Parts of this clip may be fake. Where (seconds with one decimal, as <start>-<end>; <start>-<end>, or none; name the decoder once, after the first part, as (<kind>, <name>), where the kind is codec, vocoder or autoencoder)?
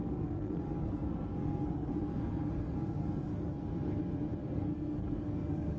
0.0-3.5 (codec, SNAC); 4.4-5.8